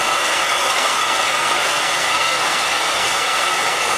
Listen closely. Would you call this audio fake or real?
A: fake